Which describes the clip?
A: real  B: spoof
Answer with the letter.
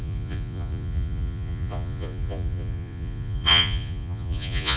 B